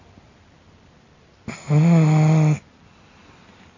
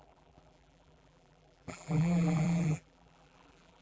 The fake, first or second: second